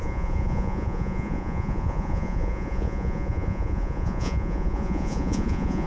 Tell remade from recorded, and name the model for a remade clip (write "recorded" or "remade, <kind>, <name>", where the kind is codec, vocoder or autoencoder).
remade, vocoder, Vocos